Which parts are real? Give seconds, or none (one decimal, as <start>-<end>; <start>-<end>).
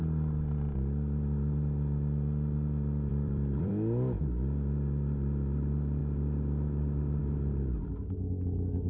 0.0-3.1; 3.7-8.9